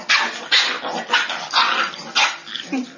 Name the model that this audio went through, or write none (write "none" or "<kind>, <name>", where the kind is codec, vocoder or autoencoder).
none